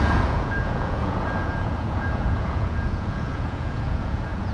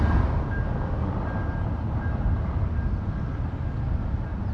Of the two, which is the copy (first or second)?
first